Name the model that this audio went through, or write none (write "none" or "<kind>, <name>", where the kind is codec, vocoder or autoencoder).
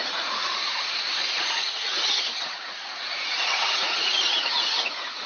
vocoder, Vocos